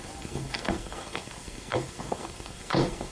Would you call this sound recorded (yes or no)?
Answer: no